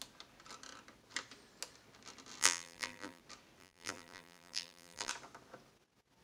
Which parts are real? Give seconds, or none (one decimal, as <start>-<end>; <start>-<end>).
0.0-2.4; 3.2-3.6; 5.1-6.2